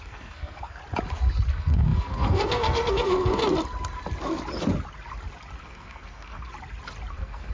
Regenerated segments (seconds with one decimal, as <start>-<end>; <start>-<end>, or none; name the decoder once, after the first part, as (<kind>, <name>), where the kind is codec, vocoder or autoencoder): 0.0-0.8 (codec, SNAC); 1.5-3.4; 5.6-6.5; 7.1-7.5